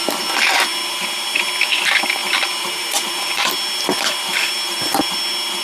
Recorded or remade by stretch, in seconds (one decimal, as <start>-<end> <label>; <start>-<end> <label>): 0.0-5.6 recorded